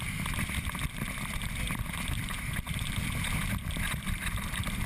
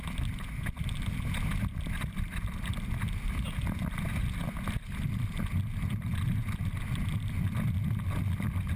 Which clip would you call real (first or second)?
second